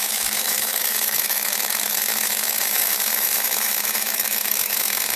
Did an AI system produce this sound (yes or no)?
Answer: yes